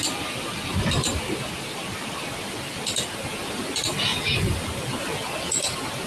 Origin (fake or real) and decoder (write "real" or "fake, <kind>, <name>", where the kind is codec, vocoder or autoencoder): real